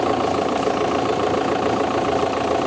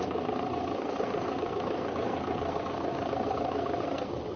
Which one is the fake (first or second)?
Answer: second